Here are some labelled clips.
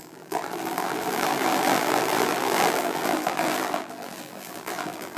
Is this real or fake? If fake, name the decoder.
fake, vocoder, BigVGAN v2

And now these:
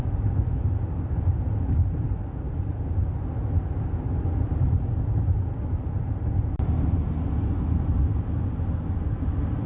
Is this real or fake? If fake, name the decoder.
real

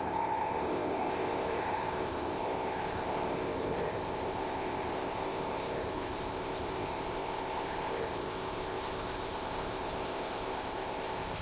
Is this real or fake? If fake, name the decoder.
fake, codec, ZipCodec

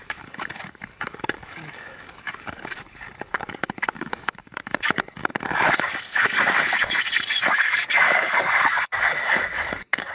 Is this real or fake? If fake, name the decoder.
fake, codec, DAC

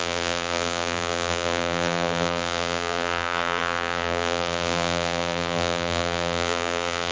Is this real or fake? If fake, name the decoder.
fake, vocoder, BigVGAN v2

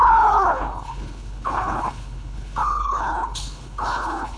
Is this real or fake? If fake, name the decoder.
fake, codec, HILCodec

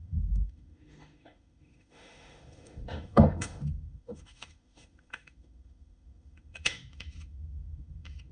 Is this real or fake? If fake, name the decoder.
fake, autoencoder, DAC-VAE